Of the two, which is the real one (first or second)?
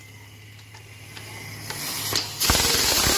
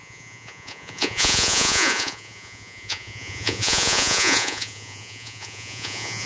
first